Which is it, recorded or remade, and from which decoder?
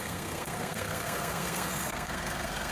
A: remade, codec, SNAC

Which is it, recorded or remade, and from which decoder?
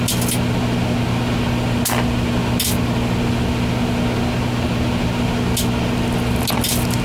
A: recorded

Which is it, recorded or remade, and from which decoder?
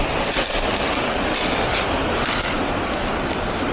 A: recorded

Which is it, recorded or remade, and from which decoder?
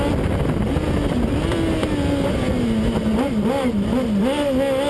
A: recorded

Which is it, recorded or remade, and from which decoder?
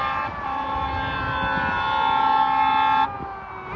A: recorded